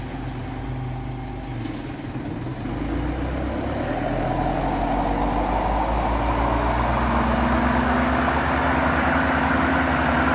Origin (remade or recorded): recorded